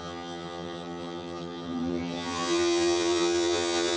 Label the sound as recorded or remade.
remade